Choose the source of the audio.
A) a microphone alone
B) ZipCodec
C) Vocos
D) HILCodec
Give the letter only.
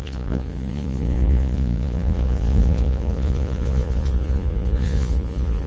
C